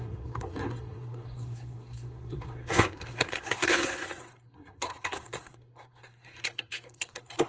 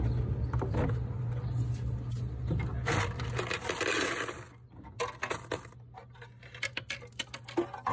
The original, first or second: second